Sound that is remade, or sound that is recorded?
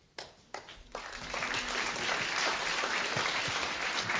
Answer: recorded